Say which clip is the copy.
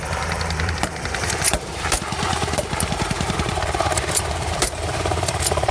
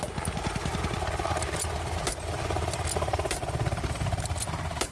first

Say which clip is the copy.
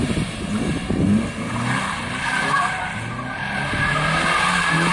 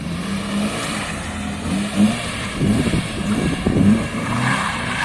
second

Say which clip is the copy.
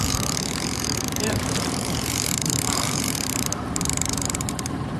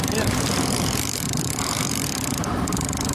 first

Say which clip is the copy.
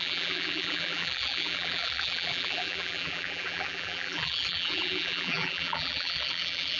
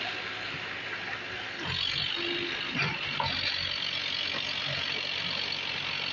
first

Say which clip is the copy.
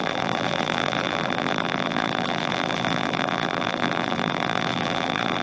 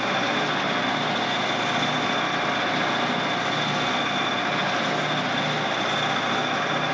first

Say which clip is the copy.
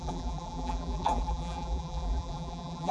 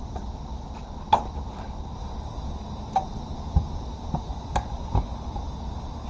first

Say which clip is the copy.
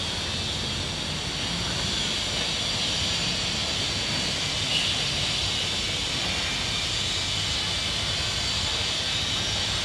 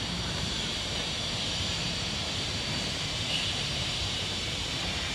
second